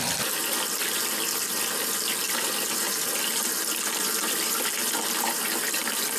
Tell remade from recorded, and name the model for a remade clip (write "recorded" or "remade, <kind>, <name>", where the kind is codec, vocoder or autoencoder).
remade, vocoder, BigVGAN v2